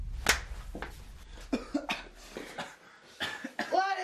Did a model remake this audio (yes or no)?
no